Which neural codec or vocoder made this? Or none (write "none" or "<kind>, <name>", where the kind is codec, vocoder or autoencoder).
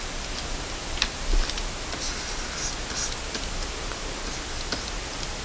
none